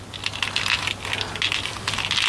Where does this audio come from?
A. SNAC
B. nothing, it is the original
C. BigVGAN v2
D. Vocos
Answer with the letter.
B